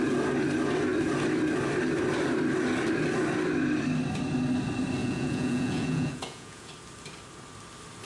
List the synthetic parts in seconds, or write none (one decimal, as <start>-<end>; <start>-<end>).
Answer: 5.0-6.7